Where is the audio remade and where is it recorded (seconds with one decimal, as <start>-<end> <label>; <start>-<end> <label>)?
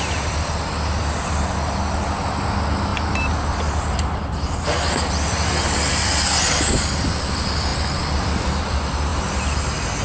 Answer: 0.0-10.0 recorded